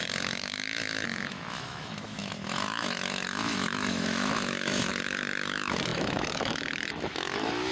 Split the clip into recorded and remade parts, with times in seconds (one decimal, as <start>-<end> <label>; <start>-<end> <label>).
0.0-7.7 remade